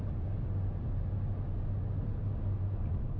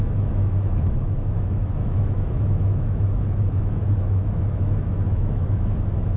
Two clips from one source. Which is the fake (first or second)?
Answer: second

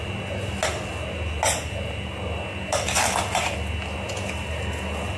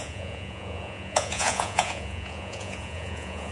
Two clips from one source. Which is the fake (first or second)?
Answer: second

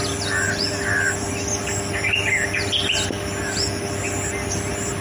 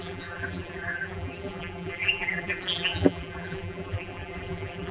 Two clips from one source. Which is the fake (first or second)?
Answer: second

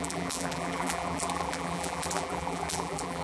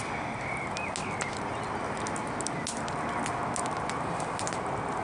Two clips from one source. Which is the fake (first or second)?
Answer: first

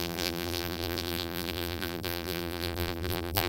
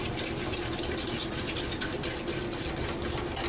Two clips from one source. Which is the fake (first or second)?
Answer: first